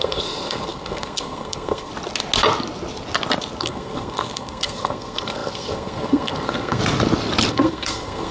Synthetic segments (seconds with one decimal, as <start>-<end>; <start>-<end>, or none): 0.0-1.9; 3.6-6.8; 7.5-8.3